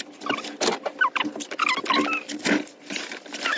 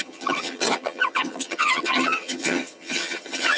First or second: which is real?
first